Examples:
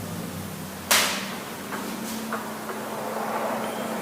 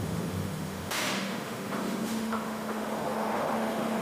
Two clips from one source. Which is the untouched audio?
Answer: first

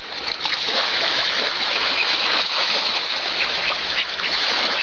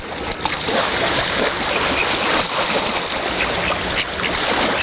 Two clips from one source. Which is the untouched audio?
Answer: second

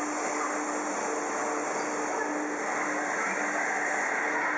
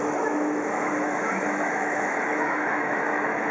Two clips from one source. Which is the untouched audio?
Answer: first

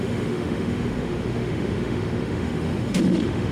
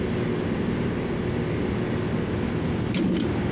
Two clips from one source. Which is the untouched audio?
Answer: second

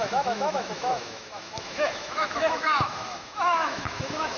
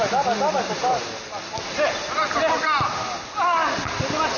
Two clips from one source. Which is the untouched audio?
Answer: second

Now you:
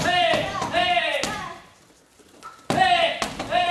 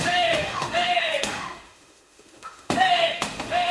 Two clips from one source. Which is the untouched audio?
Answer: first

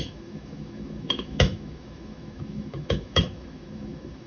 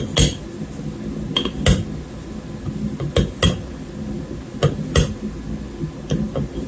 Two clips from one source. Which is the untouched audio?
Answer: second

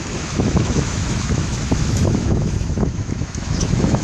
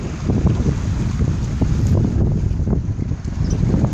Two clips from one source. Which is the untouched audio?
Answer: second